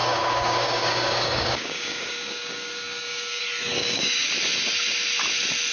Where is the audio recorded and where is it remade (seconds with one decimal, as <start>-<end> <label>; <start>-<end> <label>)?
0.0-3.4 remade; 3.4-3.8 recorded; 3.8-4.3 remade; 4.3-5.7 recorded

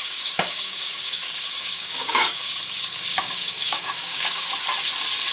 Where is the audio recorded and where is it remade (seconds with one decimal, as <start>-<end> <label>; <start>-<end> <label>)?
0.0-2.5 remade; 2.5-3.1 recorded; 3.1-4.5 remade; 4.5-5.3 recorded

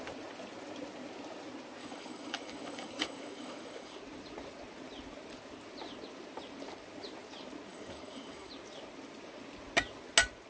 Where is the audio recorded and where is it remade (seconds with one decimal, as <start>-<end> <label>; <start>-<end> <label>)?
0.0-1.8 recorded; 1.8-4.0 remade; 4.0-7.7 recorded; 7.7-8.5 remade; 8.5-10.5 recorded

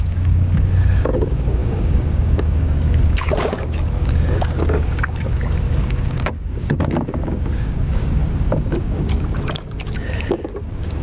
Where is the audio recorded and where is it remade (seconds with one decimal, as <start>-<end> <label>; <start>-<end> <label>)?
0.0-11.0 remade

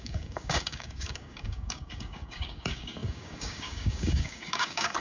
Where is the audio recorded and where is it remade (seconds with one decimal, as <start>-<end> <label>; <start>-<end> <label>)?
0.0-5.0 remade

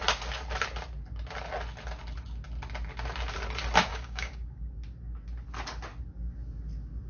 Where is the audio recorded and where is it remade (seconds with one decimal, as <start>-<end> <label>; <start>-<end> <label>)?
0.0-3.9 recorded; 3.9-4.7 remade; 4.7-7.1 recorded